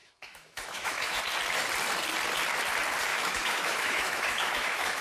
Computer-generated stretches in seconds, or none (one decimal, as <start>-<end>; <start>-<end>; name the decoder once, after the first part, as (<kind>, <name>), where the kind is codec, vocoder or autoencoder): 0.0-1.2 (autoencoder, DAC-VAE); 3.1-5.0